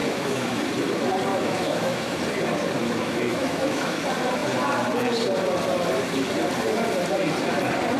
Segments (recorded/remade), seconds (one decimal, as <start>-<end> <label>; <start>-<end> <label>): 0.0-0.6 remade; 0.6-1.3 recorded; 1.3-2.2 remade; 2.2-2.8 recorded; 2.8-4.0 remade; 4.0-8.0 recorded